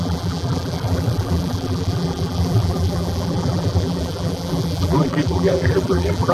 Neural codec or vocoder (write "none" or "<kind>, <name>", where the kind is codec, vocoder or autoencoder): vocoder, BigVGAN v2